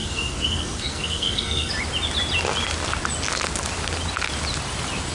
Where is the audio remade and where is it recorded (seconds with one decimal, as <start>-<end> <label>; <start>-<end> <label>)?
0.0-1.7 remade; 1.7-5.1 recorded